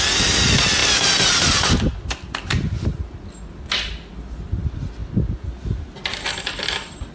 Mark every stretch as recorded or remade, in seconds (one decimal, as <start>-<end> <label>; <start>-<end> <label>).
0.0-7.1 recorded